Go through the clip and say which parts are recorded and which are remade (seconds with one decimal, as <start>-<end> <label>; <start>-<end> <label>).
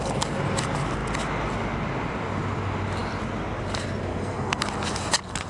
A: 0.0-4.1 recorded; 4.1-4.6 remade; 4.6-5.5 recorded